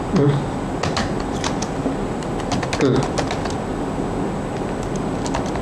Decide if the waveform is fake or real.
real